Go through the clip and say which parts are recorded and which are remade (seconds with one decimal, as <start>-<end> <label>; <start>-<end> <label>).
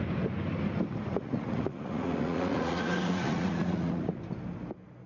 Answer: 0.0-1.1 recorded; 1.1-4.2 remade; 4.2-5.1 recorded